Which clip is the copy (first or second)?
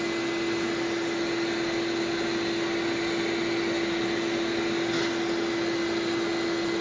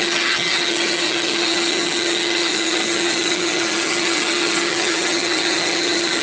second